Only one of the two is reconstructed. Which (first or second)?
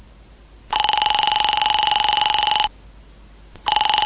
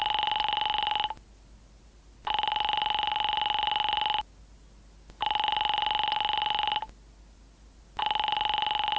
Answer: first